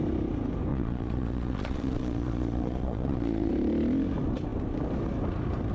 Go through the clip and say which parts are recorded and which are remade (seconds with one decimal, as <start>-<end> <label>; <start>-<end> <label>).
0.0-0.7 recorded; 0.7-3.5 remade; 3.5-5.7 recorded